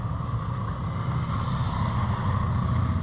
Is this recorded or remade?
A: recorded